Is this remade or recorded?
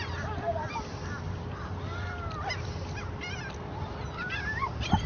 recorded